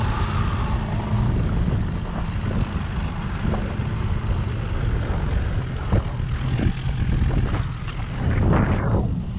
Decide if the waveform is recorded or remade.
recorded